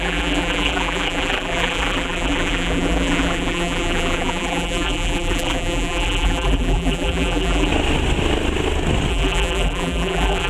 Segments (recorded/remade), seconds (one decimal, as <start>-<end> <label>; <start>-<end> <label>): 0.0-7.7 remade; 7.7-9.1 recorded; 9.1-10.5 remade